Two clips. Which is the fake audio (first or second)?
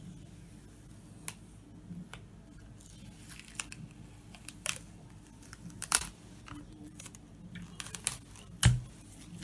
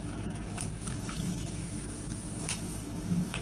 second